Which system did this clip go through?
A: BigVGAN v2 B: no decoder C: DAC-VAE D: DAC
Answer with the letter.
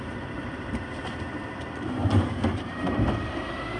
A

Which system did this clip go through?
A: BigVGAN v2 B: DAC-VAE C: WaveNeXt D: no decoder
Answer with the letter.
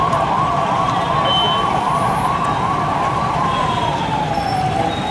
D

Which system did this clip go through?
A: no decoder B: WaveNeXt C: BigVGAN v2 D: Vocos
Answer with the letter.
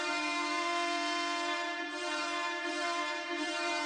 C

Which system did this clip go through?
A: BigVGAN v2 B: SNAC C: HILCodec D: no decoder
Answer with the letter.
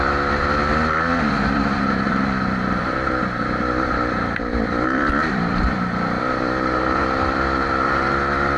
A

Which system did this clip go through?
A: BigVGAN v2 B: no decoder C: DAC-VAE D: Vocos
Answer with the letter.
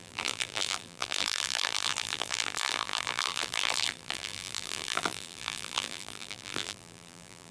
A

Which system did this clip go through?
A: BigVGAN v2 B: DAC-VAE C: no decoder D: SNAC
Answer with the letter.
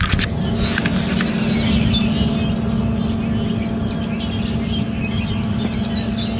C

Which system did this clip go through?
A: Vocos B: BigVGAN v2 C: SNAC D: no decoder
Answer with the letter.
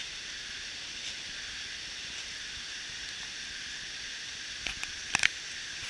D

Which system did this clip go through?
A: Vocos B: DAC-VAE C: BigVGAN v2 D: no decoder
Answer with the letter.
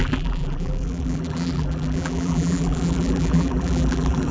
C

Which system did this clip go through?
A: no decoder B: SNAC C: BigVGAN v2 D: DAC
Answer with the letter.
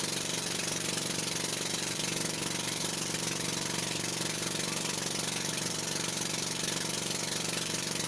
C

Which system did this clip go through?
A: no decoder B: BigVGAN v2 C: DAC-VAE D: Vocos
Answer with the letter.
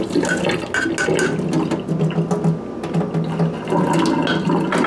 A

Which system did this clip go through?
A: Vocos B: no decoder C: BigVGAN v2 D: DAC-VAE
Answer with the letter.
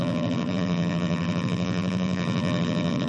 C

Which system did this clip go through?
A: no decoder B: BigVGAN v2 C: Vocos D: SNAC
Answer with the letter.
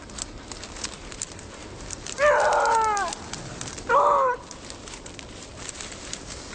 A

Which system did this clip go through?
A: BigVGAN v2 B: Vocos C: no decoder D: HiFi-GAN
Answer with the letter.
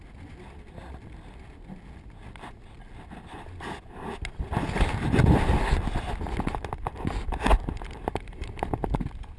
C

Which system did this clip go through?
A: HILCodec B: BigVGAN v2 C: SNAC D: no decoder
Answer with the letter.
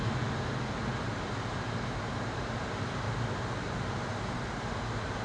D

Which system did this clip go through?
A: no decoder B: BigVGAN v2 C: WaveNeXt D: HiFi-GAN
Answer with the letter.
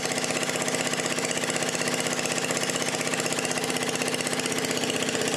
A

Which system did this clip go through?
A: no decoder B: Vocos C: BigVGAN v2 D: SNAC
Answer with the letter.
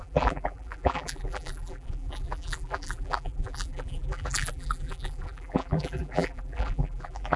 C